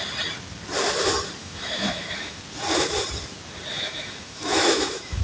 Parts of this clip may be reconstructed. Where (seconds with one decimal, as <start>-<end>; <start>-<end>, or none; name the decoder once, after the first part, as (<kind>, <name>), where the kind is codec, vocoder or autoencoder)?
1.4-2.4 (autoencoder, DAC-VAE); 3.7-5.2